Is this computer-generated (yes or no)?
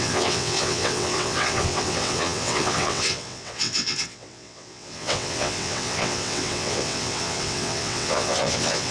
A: yes